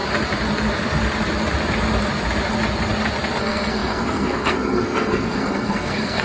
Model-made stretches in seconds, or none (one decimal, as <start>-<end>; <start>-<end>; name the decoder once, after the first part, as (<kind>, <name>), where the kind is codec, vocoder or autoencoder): 3.4-6.2 (codec, SNAC)